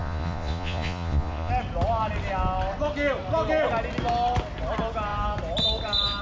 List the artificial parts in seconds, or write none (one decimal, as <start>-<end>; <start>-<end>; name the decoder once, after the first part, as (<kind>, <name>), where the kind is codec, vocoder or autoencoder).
0.0-1.5 (vocoder, Vocos)